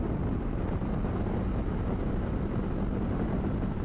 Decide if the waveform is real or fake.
real